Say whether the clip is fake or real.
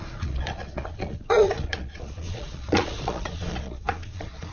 fake